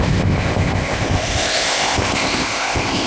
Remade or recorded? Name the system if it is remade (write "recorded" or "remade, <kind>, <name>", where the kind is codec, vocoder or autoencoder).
remade, codec, ZipCodec